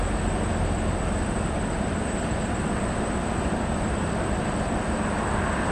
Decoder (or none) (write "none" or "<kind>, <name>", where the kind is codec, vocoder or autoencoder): vocoder, BigVGAN v2